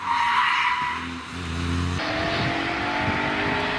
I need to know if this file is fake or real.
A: real